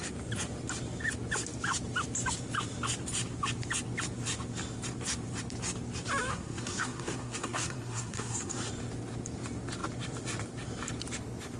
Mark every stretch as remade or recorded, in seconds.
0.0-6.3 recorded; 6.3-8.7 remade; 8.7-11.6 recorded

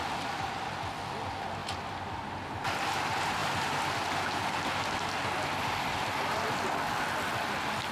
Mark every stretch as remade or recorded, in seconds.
0.0-7.9 recorded

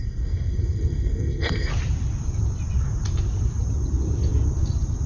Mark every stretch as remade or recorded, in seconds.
0.0-1.7 remade; 1.7-5.1 recorded

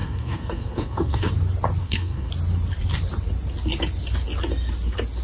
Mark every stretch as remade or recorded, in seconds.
0.0-1.3 remade; 1.3-1.8 recorded; 1.8-2.3 remade; 2.3-5.2 recorded

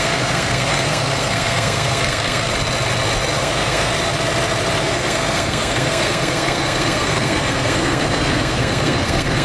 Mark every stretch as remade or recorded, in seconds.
0.0-2.5 remade; 2.5-3.4 recorded; 3.4-3.9 remade; 3.9-4.8 recorded; 4.8-9.4 remade

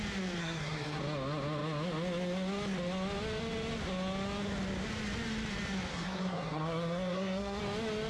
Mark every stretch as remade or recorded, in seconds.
0.0-0.4 recorded; 0.4-1.0 remade; 1.0-5.9 recorded; 5.9-7.6 remade; 7.6-8.1 recorded